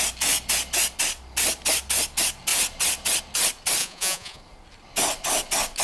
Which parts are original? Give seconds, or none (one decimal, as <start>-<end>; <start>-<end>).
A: 0.0-3.8; 4.4-5.8